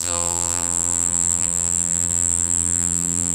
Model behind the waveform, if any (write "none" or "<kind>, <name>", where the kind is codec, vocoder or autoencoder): vocoder, BigVGAN v2